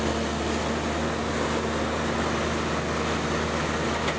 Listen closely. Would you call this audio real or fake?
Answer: real